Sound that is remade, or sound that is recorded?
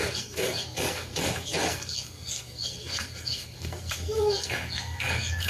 remade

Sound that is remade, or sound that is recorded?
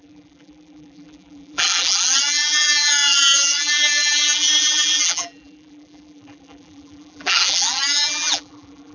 remade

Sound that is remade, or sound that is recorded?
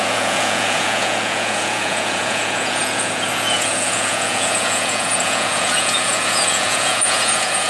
remade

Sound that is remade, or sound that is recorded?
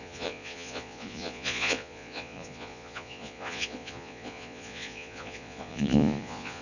remade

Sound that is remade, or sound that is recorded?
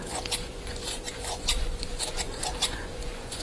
remade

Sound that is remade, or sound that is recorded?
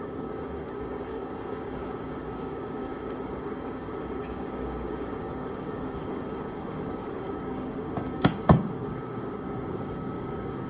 remade